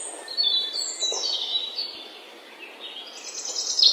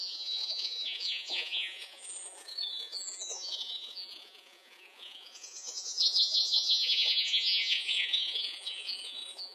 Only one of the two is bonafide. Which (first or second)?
first